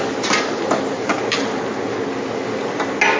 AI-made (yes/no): no